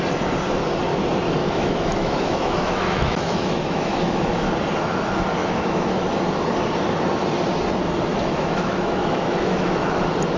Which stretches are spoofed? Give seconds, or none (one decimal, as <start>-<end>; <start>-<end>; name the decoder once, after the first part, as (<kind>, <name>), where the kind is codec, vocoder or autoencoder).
1.4-4.5 (autoencoder, DAC-VAE); 5.4-6.0; 8.1-10.0